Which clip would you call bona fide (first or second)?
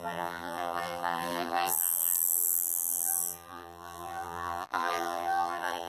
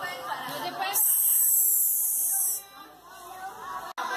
second